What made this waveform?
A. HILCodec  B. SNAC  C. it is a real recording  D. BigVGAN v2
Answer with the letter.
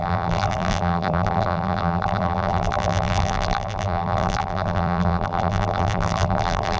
D